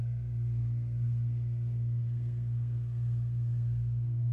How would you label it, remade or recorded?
remade